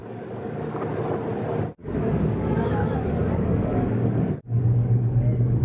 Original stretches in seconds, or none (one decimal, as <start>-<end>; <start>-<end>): 0.8-1.8